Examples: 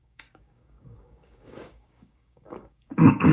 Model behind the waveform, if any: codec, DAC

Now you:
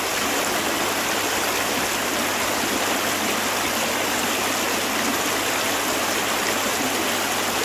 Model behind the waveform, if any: none